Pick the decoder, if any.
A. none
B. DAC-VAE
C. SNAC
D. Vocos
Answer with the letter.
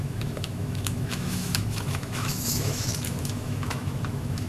B